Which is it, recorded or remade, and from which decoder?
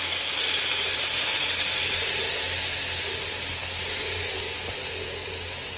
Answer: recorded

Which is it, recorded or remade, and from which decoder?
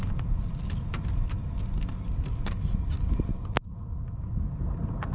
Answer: recorded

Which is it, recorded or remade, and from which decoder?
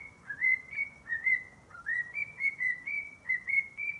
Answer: remade, vocoder, Vocos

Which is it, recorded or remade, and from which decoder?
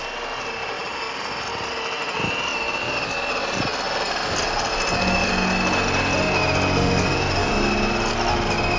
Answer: recorded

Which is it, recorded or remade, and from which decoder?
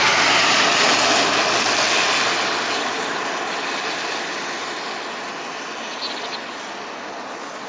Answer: recorded